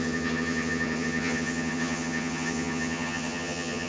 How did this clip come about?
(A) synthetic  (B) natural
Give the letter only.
A